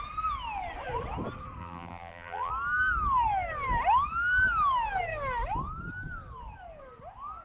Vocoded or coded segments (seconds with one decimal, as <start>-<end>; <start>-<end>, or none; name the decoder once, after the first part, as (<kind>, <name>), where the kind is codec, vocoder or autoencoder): 1.6-2.5 (vocoder, BigVGAN v2)